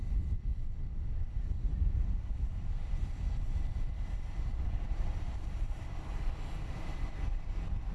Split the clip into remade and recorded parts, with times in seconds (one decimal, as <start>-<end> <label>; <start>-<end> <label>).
0.0-0.5 recorded; 0.5-1.2 remade; 1.2-1.7 recorded; 1.7-4.0 remade; 4.0-4.5 recorded; 4.5-5.8 remade; 5.8-7.9 recorded